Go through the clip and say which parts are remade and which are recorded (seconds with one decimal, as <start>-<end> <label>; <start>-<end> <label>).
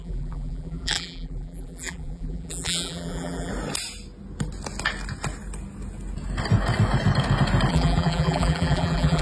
0.0-3.5 remade; 3.5-7.7 recorded; 7.7-9.2 remade